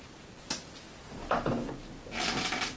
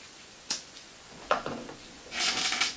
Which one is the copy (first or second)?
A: second